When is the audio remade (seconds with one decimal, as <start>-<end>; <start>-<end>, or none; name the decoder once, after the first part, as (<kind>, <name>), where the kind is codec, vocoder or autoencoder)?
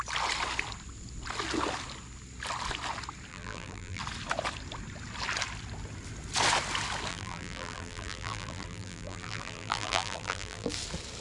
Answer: 3.3-4.0 (vocoder, BigVGAN v2); 7.1-10.7